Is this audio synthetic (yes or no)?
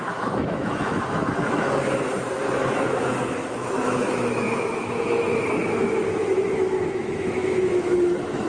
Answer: yes